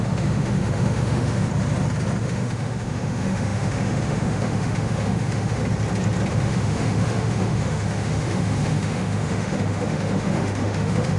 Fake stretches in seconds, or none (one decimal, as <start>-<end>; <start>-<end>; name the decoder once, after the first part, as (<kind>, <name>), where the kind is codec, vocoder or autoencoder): 0.0-1.5 (autoencoder, DAC-VAE); 2.2-5.6; 6.3-11.2